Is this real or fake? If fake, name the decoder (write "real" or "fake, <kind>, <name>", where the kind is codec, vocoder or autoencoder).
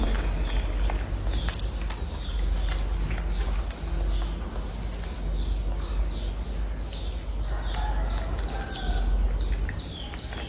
real